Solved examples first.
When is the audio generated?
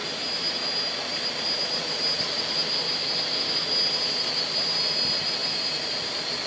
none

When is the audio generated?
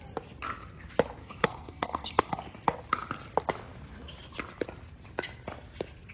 1.2-2.4 (codec, SNAC)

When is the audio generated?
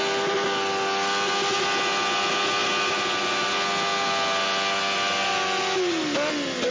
none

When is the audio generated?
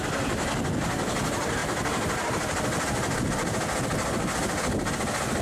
none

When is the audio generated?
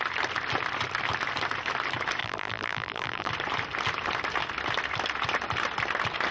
2.2-3.3 (vocoder, BigVGAN v2)